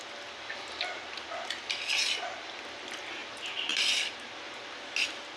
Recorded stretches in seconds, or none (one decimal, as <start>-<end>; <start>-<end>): 0.0-5.4